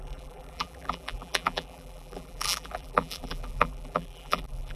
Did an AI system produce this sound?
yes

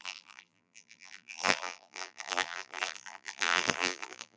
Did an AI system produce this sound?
yes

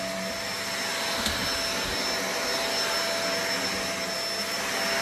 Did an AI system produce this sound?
no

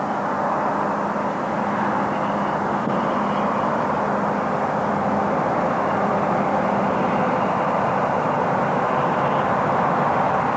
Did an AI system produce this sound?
no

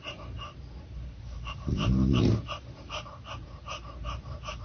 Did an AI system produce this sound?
yes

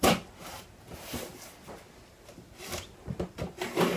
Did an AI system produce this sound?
yes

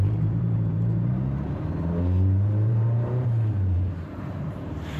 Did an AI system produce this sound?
yes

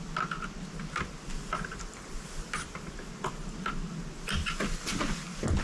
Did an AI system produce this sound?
no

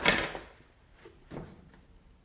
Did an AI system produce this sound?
no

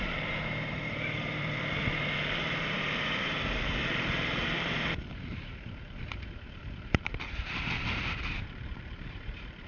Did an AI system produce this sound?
yes